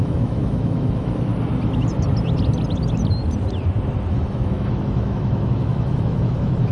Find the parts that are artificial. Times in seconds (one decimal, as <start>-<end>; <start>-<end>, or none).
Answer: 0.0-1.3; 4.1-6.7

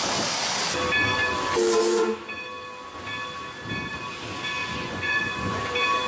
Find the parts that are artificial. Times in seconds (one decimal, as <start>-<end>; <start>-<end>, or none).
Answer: 4.6-5.6

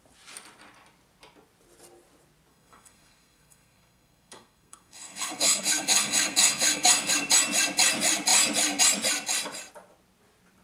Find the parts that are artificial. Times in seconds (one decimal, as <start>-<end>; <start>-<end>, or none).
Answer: 2.5-7.1

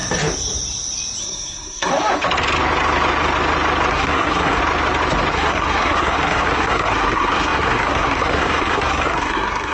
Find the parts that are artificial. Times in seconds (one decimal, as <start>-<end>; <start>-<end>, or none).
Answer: 1.2-1.9; 3.9-4.6; 5.3-9.7

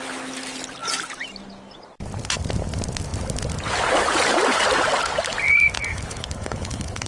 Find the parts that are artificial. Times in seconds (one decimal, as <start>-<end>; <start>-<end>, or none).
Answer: 5.9-7.1

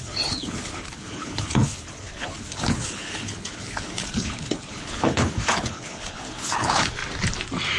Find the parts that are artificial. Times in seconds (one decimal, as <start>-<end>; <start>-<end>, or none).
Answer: 0.0-7.0

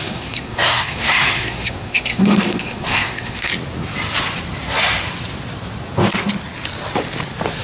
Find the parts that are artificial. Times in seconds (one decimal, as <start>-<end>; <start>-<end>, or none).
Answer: 0.0-3.5

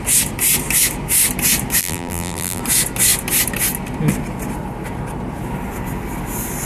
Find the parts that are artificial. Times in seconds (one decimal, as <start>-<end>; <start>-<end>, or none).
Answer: 1.8-2.6